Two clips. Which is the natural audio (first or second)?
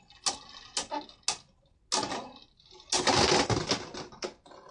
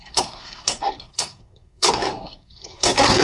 first